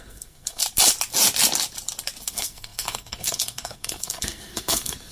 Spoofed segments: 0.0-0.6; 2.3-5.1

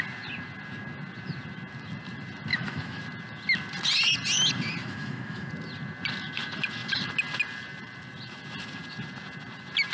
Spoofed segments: 2.5-3.0; 4.8-5.5

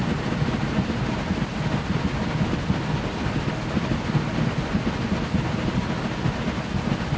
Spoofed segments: none